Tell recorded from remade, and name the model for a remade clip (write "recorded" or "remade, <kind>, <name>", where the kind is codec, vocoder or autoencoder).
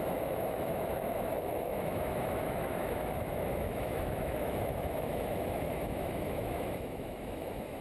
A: remade, autoencoder, DAC-VAE